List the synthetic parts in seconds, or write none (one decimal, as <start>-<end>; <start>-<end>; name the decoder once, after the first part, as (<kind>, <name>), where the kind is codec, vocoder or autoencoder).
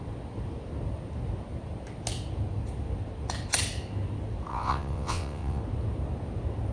4.5-5.6 (vocoder, WaveNeXt)